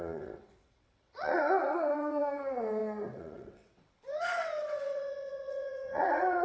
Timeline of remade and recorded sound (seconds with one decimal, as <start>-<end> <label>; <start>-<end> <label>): 0.0-6.4 remade